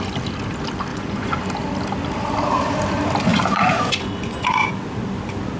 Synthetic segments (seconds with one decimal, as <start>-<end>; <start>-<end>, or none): 0.9-1.5; 3.3-4.7